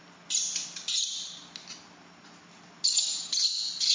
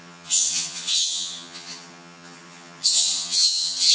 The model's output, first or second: second